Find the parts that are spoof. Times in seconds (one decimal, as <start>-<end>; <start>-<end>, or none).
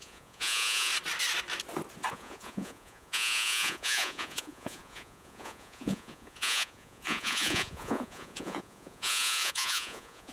0.0-0.9; 2.1-10.3